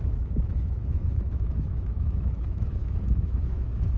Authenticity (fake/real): fake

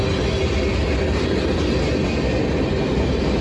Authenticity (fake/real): real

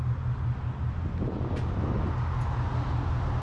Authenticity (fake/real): real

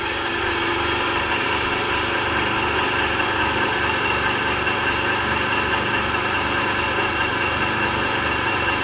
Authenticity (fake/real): fake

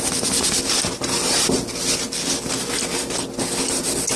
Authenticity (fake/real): real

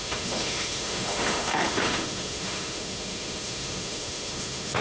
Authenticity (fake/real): fake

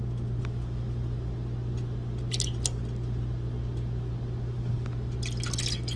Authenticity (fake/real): real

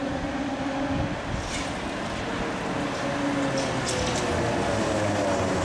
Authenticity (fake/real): real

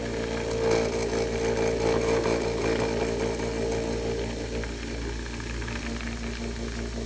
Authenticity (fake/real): real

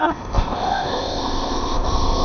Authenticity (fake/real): fake